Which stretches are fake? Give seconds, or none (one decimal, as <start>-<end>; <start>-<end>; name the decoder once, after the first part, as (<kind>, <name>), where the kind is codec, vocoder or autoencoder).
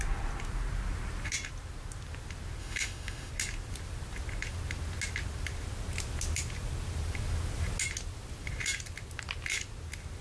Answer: 2.6-3.3 (autoencoder, DAC-VAE)